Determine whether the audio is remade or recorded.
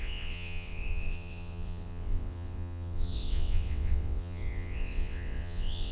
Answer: remade